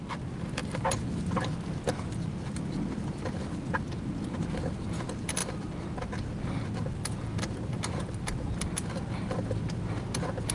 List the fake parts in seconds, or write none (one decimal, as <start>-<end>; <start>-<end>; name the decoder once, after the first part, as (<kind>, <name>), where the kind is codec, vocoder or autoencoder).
none